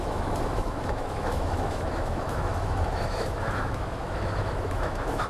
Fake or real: fake